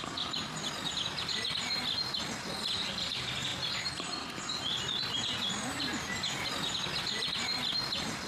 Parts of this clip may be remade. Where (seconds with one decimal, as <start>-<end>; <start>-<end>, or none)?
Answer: 3.5-4.4